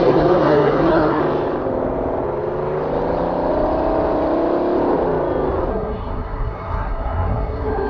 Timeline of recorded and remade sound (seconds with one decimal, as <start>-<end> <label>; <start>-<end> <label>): 0.0-1.2 remade; 1.2-5.7 recorded; 5.7-7.9 remade